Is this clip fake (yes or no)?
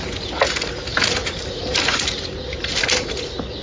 no